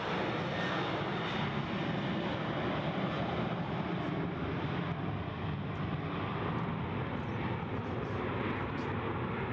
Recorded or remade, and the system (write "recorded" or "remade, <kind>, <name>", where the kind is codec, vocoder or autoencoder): recorded